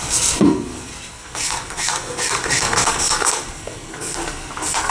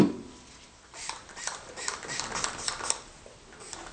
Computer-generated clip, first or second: first